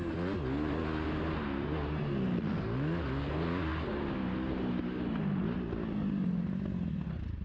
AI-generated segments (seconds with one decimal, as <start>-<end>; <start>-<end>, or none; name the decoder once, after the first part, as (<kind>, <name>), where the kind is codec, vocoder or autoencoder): none